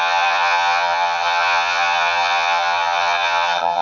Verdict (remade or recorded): remade